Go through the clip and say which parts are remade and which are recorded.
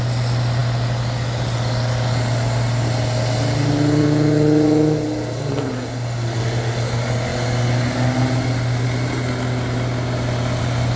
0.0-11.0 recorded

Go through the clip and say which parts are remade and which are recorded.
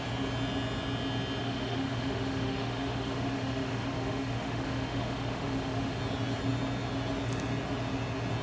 0.0-1.4 recorded; 1.4-6.0 remade; 6.0-8.4 recorded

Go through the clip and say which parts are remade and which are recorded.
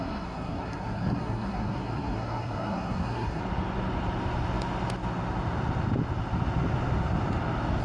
0.0-3.4 remade; 3.4-7.8 recorded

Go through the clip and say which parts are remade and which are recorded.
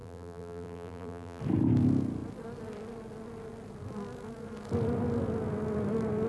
0.0-1.4 remade; 1.4-6.3 recorded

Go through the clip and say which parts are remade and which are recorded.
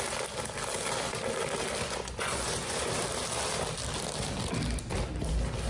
0.0-1.8 recorded; 1.8-2.9 remade; 2.9-5.7 recorded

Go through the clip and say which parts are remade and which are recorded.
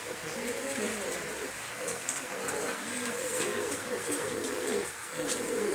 0.0-0.9 remade; 0.9-1.7 recorded; 1.7-5.7 remade